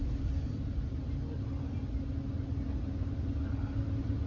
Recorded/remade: recorded